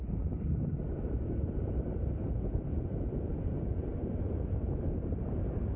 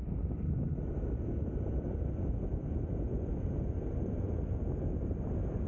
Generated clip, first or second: first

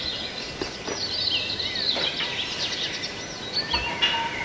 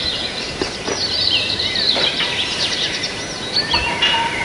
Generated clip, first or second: second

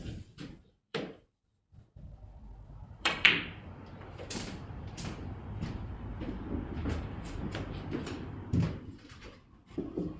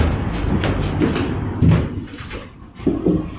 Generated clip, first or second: first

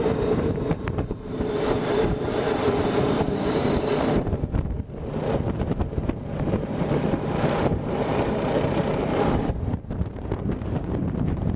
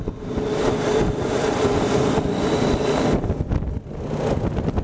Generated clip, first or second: first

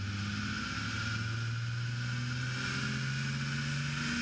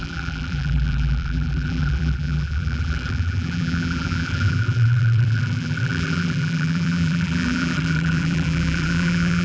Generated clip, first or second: second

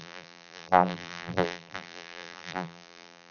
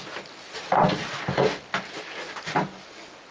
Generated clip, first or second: first